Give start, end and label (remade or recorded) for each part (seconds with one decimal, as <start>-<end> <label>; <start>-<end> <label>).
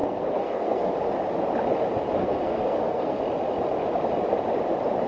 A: 0.0-0.9 remade; 0.9-2.2 recorded; 2.2-3.2 remade; 3.2-5.1 recorded